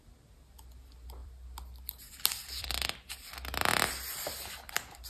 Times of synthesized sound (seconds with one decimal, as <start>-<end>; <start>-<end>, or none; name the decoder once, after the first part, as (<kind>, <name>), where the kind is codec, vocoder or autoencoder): 1.2-3.0 (vocoder, BigVGAN v2)